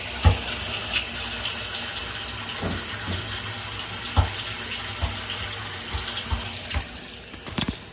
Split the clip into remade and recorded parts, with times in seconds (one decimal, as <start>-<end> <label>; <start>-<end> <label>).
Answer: 0.0-7.9 recorded